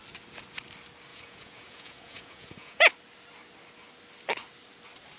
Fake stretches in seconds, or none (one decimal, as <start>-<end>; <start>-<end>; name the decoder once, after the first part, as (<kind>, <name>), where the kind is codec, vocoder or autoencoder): 1.1-2.9 (vocoder, Vocos)